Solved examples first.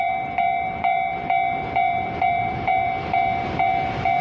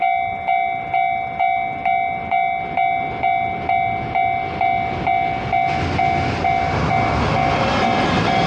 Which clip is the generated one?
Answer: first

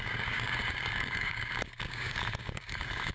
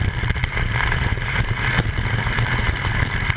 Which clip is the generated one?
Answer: first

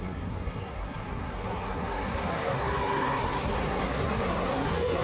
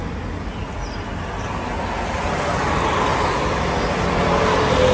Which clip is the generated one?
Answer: first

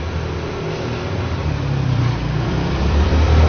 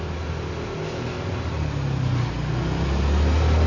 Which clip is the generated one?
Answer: first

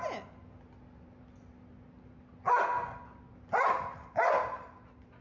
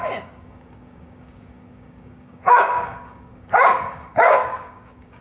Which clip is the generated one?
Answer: second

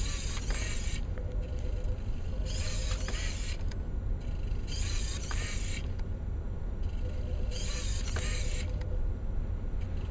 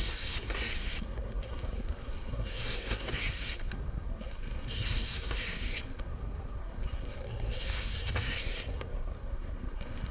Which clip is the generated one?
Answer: second